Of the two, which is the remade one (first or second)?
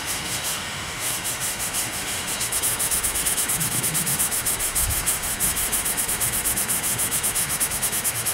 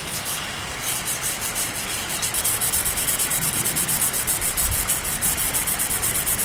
first